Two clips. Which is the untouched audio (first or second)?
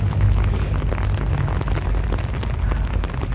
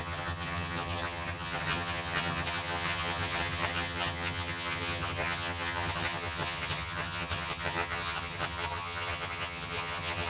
first